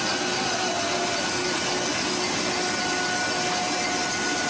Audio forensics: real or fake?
real